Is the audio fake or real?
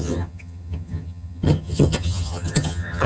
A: fake